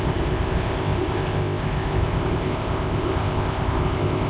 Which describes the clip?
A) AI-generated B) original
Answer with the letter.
A